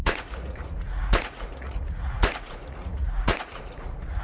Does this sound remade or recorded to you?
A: remade